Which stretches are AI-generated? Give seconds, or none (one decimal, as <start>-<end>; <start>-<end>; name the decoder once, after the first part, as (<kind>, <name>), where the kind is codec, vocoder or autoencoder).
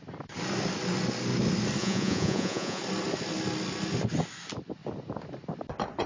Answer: 1.8-2.8 (vocoder, Vocos)